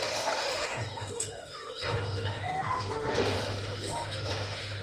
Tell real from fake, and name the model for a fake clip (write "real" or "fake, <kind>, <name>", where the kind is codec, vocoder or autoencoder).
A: fake, autoencoder, DAC-VAE